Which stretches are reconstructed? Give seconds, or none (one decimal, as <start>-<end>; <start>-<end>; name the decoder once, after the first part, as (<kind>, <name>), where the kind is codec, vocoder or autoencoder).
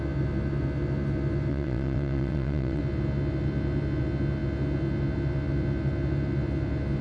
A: 1.5-2.8 (vocoder, WaveNeXt)